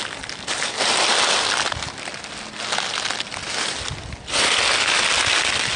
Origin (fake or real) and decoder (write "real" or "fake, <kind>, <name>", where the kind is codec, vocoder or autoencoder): real